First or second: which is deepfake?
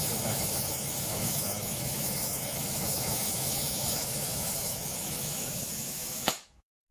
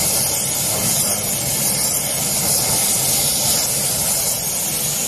first